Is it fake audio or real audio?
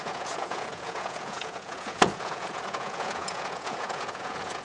fake